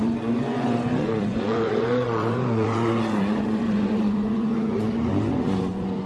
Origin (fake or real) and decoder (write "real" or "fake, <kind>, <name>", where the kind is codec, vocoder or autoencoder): fake, vocoder, Vocos